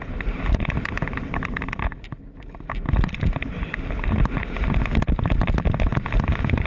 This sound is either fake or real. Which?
real